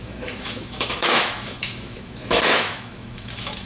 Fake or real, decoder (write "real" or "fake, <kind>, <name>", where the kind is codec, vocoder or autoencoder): fake, autoencoder, DAC-VAE